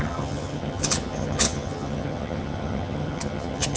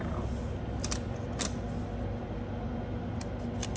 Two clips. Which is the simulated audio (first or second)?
first